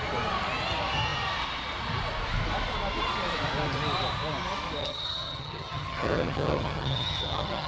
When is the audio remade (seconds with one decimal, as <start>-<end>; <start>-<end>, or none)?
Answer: 4.8-7.7

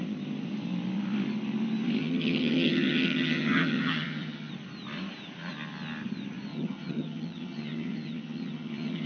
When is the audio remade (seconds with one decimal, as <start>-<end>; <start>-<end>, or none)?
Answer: 2.0-4.5; 6.5-9.1

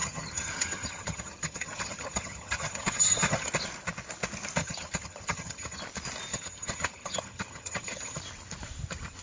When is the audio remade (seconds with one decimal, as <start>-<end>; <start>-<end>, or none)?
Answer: 0.0-3.5; 4.6-5.8; 6.3-8.2

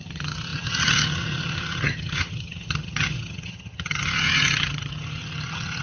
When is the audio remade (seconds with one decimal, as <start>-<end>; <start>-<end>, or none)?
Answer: 0.0-5.8